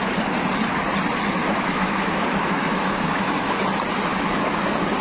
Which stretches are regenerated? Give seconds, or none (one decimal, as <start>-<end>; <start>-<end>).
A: 1.4-3.6; 4.1-4.6